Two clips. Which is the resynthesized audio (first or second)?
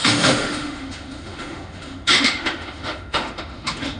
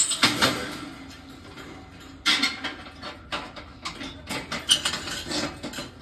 first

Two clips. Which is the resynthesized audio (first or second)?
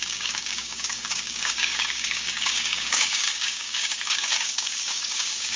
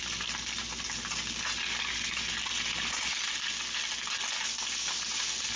first